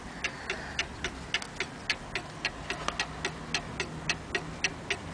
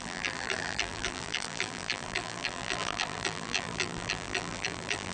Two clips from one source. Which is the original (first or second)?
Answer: first